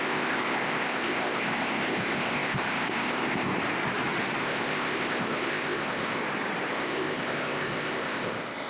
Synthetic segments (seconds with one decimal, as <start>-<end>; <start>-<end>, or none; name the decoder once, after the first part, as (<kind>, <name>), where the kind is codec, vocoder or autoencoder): 0.0-3.5 (codec, ZipCodec); 4.4-6.2; 6.7-8.7